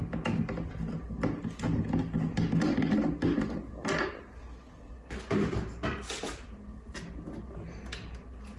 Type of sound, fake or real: real